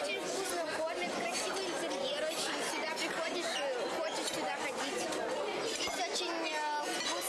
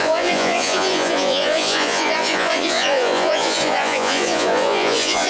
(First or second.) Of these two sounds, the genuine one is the first